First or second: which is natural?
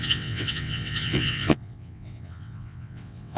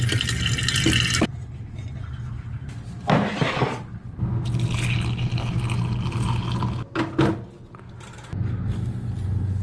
second